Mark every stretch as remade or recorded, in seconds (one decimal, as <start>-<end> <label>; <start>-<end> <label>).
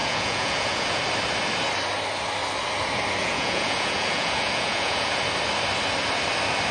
0.0-1.0 remade; 1.0-3.2 recorded; 3.2-5.2 remade; 5.2-6.7 recorded